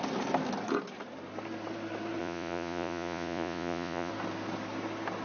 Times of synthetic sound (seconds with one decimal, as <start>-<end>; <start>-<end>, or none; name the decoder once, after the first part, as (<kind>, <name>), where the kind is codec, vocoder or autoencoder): 2.2-4.1 (vocoder, Vocos)